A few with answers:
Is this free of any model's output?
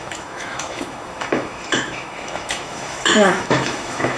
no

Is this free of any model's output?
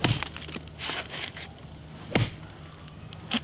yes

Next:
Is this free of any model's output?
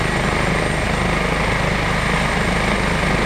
yes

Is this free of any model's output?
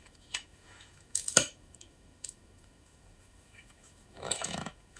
no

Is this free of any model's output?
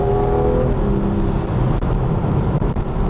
yes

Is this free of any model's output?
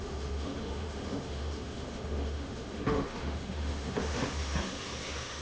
no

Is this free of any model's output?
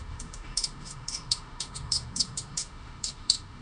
no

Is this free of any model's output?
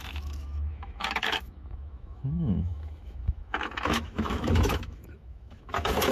no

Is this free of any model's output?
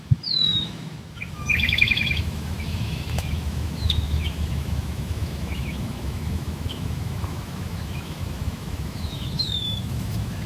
no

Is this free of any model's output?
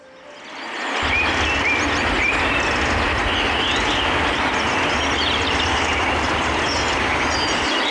yes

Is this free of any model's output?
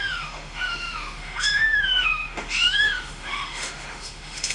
no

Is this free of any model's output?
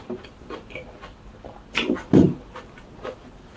yes